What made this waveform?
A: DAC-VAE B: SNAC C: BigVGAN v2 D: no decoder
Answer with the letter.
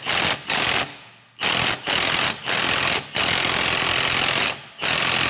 D